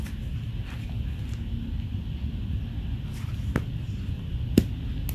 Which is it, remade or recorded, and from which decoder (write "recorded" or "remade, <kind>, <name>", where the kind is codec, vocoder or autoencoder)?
recorded